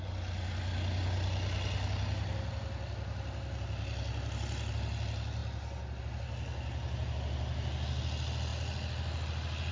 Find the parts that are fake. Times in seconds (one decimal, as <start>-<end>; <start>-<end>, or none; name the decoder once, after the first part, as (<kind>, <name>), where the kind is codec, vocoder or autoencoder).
none